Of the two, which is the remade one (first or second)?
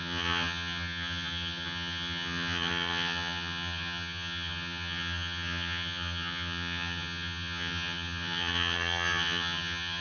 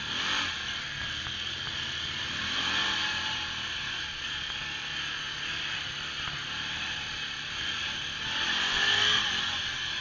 first